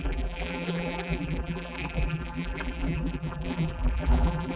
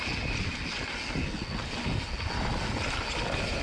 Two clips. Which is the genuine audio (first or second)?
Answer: second